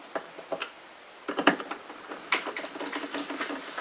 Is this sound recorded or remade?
recorded